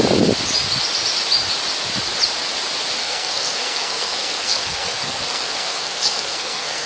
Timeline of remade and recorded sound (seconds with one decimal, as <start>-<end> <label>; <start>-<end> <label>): 0.0-3.0 recorded; 3.0-6.9 remade